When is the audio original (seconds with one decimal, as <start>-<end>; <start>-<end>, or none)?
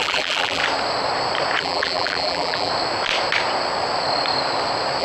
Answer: 0.6-1.6; 2.7-5.0